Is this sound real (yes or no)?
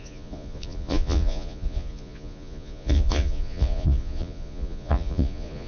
no